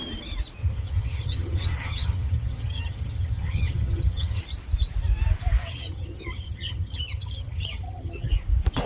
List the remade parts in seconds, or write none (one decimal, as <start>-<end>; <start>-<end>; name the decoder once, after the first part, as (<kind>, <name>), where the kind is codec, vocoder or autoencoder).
0.6-4.4 (vocoder, HiFi-GAN); 5.6-8.3

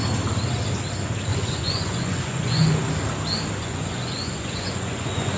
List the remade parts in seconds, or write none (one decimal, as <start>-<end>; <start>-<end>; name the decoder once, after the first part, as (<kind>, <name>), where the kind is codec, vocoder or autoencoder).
1.3-2.7 (vocoder, Vocos); 3.6-5.4

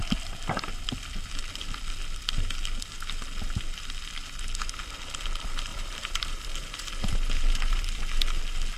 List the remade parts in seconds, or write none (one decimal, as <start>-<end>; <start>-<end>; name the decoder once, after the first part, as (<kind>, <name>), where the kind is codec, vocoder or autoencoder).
5.7-8.4 (vocoder, BigVGAN v2)

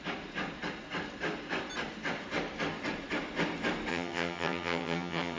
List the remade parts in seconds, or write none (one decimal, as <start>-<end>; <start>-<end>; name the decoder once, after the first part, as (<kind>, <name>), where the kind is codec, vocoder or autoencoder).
3.9-5.4 (vocoder, HiFi-GAN)

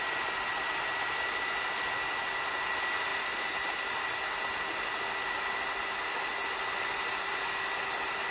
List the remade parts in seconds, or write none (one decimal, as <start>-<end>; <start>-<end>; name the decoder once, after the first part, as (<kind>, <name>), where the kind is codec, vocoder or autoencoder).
none

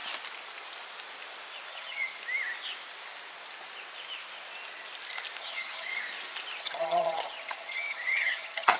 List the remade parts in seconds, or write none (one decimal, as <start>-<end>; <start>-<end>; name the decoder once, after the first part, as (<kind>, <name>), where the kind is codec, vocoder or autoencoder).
1.7-2.1 (vocoder, HiFi-GAN); 5.4-5.9; 6.6-8.8

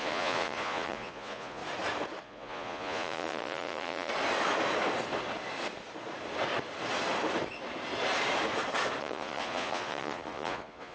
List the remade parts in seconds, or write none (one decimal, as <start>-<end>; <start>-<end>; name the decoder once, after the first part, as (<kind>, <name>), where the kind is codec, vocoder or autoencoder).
0.0-1.6 (vocoder, Vocos); 2.2-4.1; 9.0-10.9

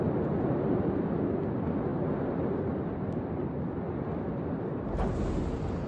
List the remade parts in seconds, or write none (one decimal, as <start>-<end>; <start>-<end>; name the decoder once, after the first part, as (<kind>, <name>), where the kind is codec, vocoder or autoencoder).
none